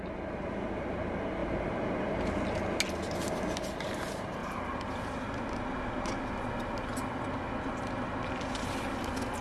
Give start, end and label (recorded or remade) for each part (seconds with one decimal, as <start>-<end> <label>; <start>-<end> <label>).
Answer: 0.0-1.4 recorded; 1.4-2.2 remade; 2.2-9.4 recorded